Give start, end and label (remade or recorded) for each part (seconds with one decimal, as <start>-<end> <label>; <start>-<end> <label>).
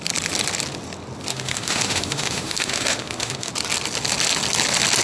0.0-1.3 recorded; 1.3-3.5 remade; 3.5-5.0 recorded